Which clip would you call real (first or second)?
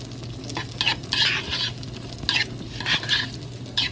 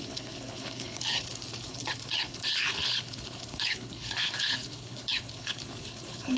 first